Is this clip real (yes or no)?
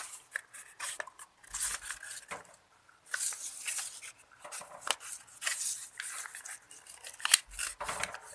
yes